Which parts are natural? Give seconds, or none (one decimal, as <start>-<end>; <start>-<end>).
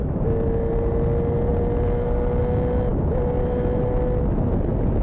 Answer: 0.0-1.5; 2.4-5.0